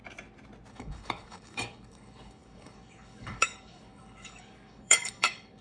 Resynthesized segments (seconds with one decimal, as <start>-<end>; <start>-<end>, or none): 0.7-5.6